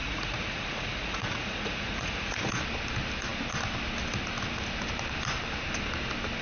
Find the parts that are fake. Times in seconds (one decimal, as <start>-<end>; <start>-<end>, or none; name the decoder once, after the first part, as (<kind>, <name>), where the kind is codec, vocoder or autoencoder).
0.0-2.6 (vocoder, Vocos)